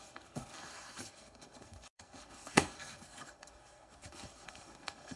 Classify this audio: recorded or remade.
remade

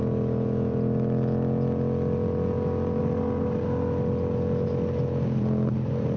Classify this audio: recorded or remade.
recorded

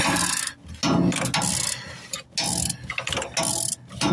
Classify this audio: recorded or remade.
recorded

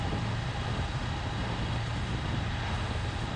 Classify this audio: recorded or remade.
recorded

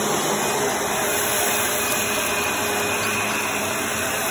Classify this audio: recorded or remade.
recorded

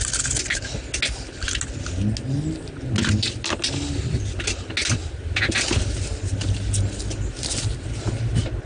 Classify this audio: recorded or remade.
recorded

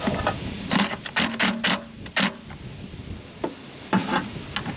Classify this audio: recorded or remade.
recorded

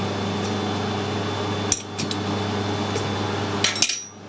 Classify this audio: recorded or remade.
recorded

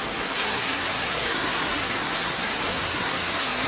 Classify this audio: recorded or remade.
remade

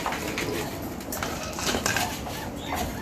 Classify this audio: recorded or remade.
recorded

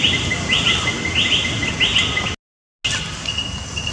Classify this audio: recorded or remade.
recorded